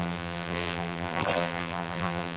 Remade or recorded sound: remade